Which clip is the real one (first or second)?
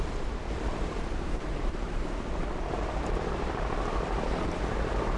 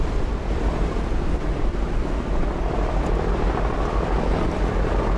second